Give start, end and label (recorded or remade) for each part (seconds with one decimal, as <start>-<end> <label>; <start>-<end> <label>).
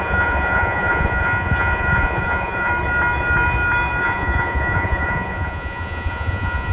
0.0-2.7 remade; 2.7-4.0 recorded; 4.0-6.7 remade